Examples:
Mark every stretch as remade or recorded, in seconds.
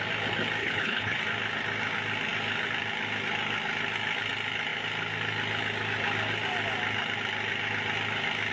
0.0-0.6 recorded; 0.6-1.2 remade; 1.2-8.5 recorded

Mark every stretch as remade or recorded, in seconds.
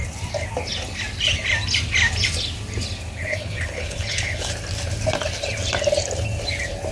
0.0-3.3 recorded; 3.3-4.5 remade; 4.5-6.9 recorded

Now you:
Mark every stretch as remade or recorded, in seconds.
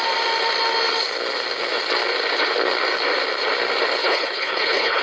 0.0-4.0 recorded; 4.0-5.0 remade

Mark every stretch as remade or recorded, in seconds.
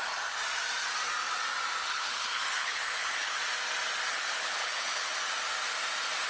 0.0-1.8 recorded; 1.8-3.4 remade; 3.4-4.1 recorded; 4.1-5.1 remade; 5.1-6.3 recorded